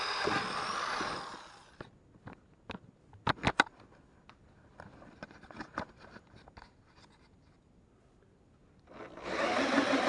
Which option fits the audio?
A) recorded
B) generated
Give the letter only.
A